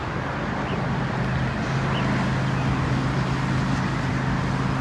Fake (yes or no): no